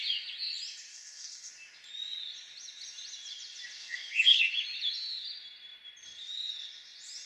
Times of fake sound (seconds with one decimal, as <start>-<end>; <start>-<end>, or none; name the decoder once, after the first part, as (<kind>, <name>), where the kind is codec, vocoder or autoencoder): 0.9-1.5 (codec, SNAC); 3.8-4.4

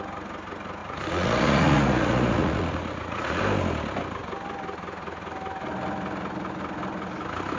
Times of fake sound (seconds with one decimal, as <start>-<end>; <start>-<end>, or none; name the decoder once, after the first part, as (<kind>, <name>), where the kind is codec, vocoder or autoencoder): 0.8-3.4 (vocoder, Vocos)

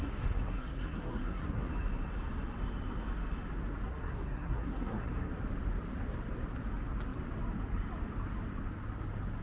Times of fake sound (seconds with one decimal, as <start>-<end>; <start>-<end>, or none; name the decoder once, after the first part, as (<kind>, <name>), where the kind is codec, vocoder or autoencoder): 0.0-1.7 (codec, SNAC); 3.9-5.3

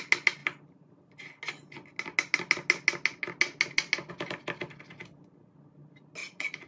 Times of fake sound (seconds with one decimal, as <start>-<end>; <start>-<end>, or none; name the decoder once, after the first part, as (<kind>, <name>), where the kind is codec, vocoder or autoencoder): 6.2-6.7 (vocoder, Vocos)